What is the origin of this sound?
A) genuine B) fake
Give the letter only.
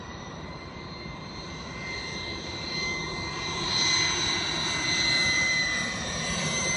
B